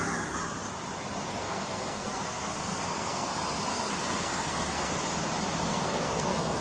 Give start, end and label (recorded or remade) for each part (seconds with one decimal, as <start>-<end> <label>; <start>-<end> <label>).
0.0-1.3 recorded; 1.3-3.3 remade; 3.3-3.7 recorded; 3.7-5.0 remade; 5.0-5.7 recorded; 5.7-6.6 remade